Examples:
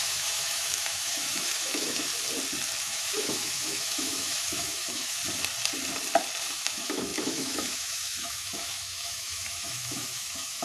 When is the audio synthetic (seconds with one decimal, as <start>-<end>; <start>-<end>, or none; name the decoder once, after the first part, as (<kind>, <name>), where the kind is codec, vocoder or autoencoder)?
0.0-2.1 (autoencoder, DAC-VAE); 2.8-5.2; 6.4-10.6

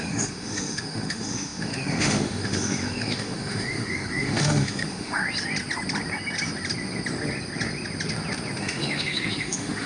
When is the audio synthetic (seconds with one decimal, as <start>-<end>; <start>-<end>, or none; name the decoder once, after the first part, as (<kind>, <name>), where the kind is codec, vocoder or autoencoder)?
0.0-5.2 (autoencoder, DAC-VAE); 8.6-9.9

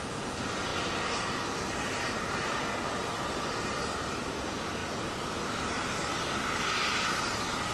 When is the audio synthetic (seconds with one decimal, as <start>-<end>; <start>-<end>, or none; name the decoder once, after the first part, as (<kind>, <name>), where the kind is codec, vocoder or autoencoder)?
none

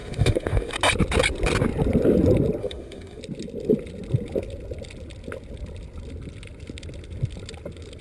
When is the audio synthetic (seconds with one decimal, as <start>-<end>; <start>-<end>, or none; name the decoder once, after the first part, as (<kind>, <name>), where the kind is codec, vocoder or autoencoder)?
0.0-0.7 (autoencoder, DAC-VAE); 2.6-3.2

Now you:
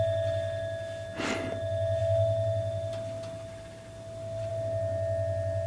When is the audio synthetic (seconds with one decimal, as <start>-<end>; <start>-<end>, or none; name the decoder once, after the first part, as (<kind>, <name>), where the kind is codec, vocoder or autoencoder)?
none

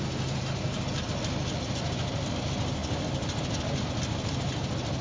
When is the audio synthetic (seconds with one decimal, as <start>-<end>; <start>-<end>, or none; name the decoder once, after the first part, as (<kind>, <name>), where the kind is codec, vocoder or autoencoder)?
none

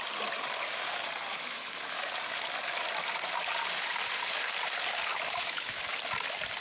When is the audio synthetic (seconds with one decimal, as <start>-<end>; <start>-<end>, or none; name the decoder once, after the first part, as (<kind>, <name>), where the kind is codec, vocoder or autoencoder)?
1.3-2.1 (autoencoder, DAC-VAE); 5.1-5.8